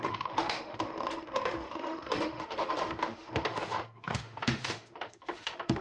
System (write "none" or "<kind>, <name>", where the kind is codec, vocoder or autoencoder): autoencoder, DAC-VAE